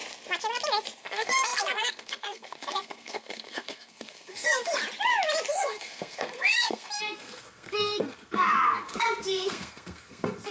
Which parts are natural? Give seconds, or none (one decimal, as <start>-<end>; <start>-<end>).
0.0-1.0; 4.8-5.5